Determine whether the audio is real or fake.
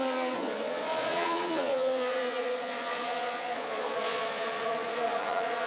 fake